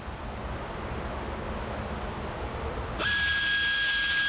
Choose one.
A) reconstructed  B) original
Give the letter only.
B